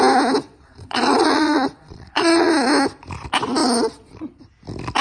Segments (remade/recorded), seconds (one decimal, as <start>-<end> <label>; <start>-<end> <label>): 0.0-0.4 recorded; 0.4-2.5 remade; 2.5-3.6 recorded; 3.6-4.4 remade; 4.4-5.0 recorded